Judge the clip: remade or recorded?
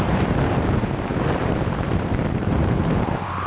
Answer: remade